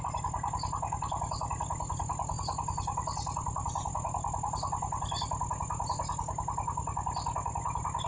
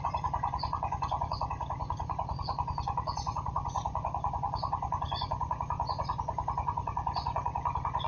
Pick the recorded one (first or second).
first